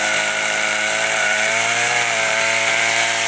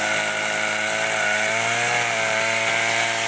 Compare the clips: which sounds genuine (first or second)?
second